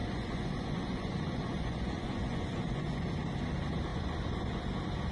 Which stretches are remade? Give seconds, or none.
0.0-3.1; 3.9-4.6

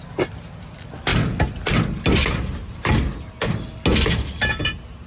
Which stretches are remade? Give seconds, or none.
none

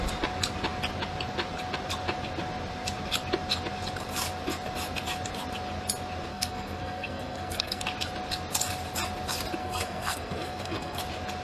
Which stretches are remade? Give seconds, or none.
6.3-7.8; 9.6-11.0

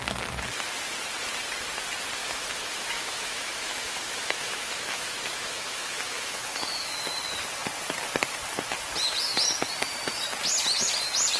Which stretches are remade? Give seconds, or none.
2.2-7.1

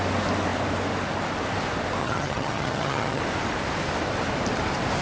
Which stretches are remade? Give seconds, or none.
2.0-3.2

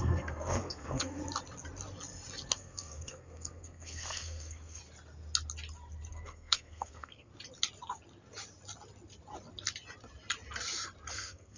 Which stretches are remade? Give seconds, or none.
0.0-1.2; 2.5-4.8; 6.1-7.3; 11.1-11.6

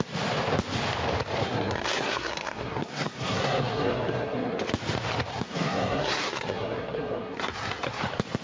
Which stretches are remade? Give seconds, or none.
1.4-4.6; 5.3-8.0